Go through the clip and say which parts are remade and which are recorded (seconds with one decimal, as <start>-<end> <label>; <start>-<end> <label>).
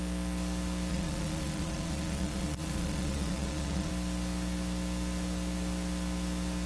0.0-0.9 recorded; 0.9-3.9 remade; 3.9-6.7 recorded